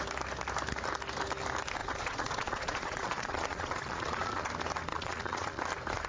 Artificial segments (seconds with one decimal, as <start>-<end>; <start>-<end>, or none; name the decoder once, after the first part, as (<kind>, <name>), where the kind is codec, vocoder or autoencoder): 1.8-4.5 (vocoder, Vocos); 4.9-5.6